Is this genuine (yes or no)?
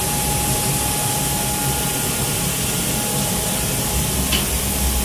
yes